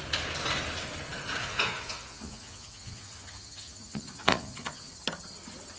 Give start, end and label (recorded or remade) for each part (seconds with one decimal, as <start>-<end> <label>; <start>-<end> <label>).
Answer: 0.0-1.4 recorded; 1.4-4.9 remade; 4.9-5.8 recorded

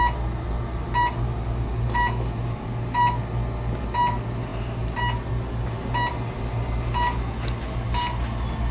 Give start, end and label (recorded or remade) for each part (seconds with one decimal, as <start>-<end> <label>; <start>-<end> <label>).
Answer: 0.0-8.7 recorded

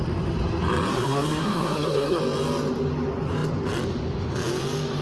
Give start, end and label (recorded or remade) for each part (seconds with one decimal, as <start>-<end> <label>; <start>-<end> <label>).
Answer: 0.0-0.9 recorded; 0.9-2.2 remade; 2.2-5.0 recorded